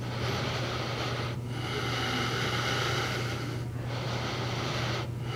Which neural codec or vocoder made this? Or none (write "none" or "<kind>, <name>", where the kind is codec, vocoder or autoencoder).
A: none